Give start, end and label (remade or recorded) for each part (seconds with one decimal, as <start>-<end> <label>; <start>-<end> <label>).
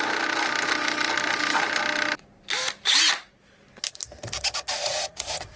0.0-4.8 recorded; 4.8-5.6 remade